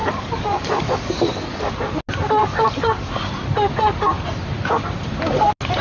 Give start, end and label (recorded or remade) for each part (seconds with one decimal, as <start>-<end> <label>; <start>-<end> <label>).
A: 0.0-1.7 remade; 1.7-2.4 recorded; 2.4-3.1 remade; 3.1-5.8 recorded